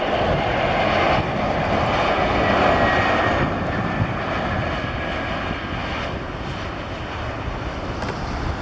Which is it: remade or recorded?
recorded